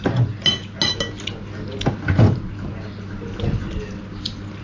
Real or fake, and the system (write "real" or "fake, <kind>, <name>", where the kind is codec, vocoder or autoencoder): real